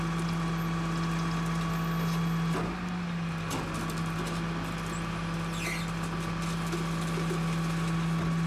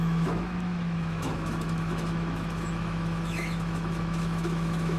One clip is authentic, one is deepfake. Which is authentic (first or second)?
first